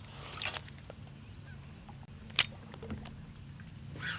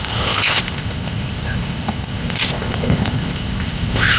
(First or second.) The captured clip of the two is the first